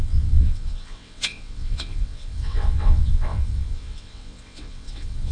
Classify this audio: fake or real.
fake